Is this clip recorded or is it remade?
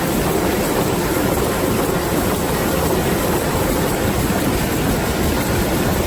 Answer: recorded